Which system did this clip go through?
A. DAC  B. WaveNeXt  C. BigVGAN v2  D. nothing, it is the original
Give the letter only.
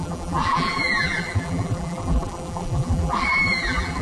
C